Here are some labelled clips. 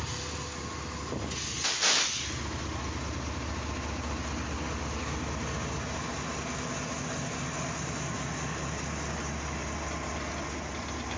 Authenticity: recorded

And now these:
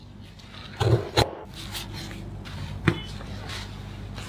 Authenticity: recorded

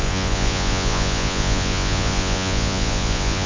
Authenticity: remade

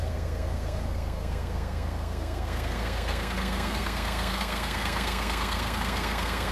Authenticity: remade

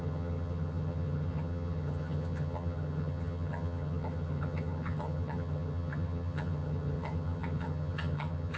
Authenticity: remade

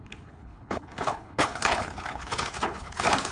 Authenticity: remade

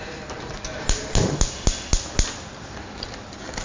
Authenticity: recorded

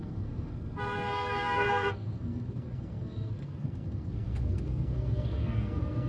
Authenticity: remade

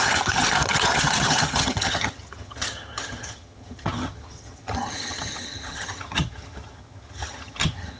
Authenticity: remade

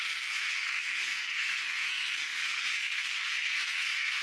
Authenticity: remade